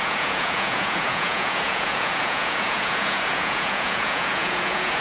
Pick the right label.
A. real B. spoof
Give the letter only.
B